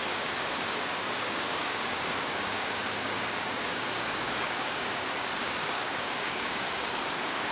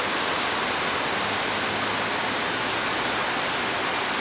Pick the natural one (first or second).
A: second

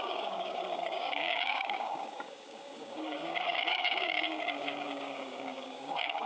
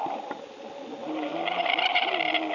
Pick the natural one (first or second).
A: second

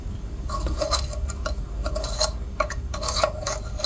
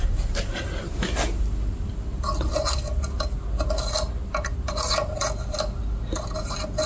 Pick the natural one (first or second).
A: second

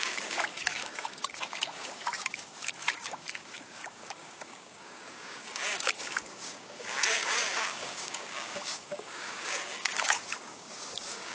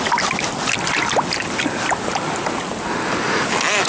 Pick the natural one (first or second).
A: second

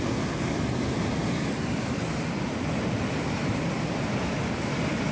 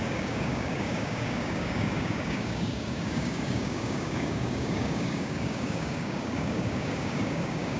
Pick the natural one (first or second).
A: first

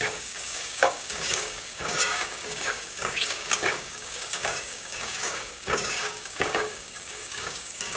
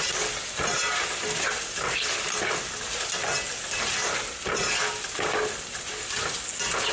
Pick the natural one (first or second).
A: second